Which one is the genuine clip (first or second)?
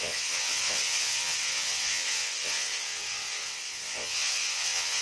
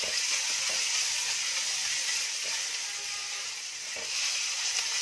second